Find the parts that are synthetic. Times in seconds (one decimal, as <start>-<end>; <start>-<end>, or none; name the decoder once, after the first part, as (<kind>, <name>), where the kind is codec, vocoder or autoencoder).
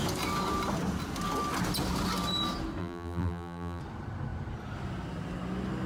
2.8-3.8 (vocoder, BigVGAN v2)